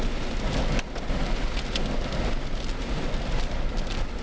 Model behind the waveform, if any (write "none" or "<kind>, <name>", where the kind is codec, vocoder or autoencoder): none